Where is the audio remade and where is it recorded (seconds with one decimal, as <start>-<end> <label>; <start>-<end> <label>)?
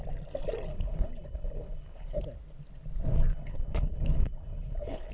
0.0-0.7 recorded; 0.7-2.2 remade; 2.2-3.3 recorded; 3.3-5.1 remade